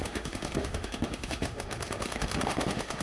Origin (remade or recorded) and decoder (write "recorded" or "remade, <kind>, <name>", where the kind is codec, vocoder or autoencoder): remade, autoencoder, DAC-VAE